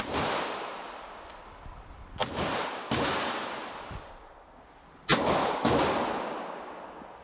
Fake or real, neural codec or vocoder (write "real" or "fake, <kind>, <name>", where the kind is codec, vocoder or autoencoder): real